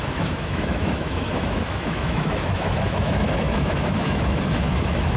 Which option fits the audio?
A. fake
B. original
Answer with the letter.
A